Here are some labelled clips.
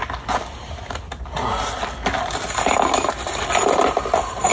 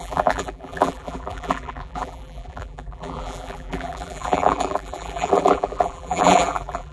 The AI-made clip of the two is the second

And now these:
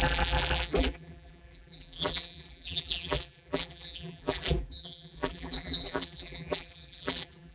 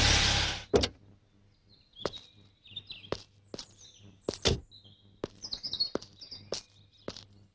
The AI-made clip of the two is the first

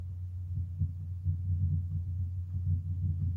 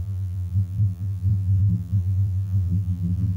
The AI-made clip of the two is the second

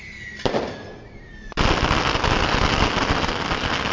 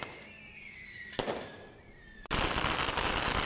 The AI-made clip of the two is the second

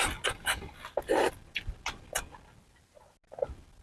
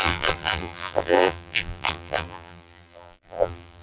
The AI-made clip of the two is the second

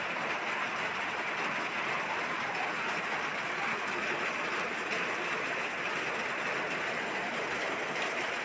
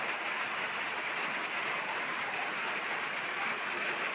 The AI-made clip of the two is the second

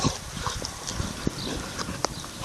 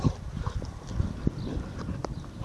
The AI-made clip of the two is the first